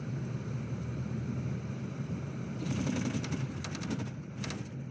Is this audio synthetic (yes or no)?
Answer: no